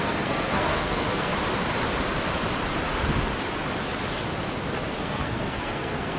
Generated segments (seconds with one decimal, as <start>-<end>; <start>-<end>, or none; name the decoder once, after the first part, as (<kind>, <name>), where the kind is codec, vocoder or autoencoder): 0.0-1.3 (codec, SNAC); 5.0-6.2